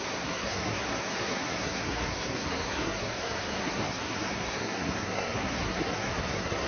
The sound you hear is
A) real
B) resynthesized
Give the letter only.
B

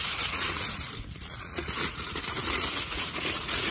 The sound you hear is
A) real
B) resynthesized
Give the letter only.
B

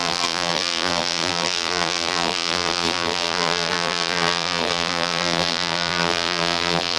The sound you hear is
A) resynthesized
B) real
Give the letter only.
A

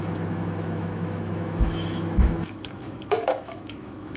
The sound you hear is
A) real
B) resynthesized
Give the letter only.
B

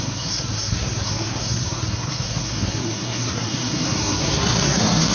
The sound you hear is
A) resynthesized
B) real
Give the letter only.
A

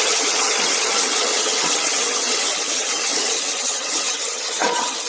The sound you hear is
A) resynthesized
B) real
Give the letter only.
A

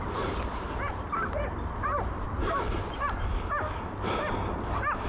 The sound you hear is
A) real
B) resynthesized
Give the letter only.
A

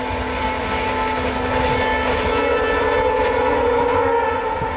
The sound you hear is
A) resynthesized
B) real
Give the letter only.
B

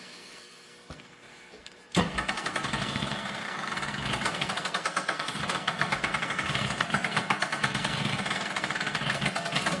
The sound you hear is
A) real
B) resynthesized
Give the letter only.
B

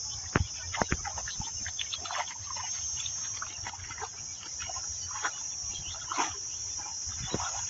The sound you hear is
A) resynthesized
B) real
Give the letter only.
B